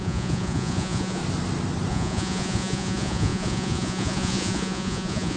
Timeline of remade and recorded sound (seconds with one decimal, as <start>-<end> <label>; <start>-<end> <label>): 0.0-1.2 remade; 1.2-1.9 recorded; 1.9-5.4 remade